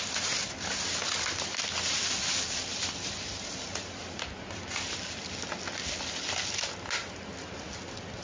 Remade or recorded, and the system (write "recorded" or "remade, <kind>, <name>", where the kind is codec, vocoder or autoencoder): recorded